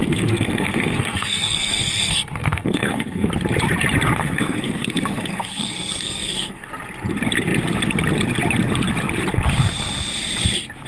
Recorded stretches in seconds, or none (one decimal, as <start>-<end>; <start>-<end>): 3.3-4.2; 6.7-10.9